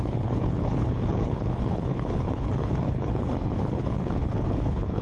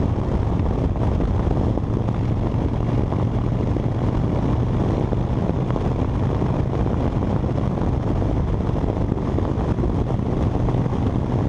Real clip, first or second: second